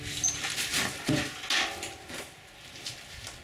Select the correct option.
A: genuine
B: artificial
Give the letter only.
A